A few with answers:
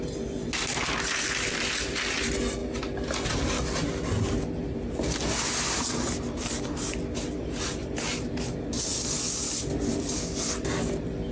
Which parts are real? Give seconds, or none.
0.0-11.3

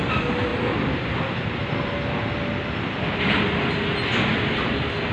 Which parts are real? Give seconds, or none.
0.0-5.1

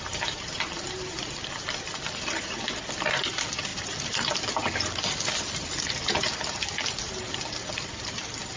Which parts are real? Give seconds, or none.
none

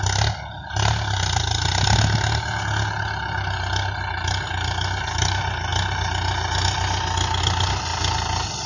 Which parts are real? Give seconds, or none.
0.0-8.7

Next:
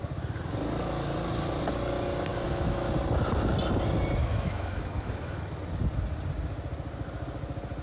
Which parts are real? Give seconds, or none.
0.0-2.3; 2.9-4.2; 5.4-7.8

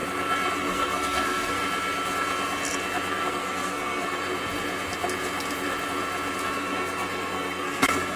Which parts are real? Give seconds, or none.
0.0-0.6; 1.6-3.1; 4.2-6.5

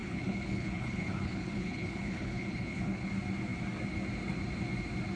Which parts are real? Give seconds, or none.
3.1-5.2

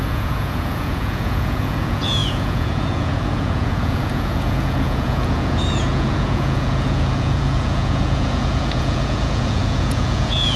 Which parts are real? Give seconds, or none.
none